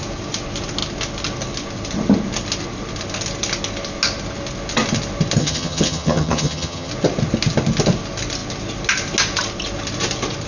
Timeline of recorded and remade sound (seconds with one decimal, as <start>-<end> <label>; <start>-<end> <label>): 0.0-5.4 recorded; 5.4-6.9 remade; 6.9-10.5 recorded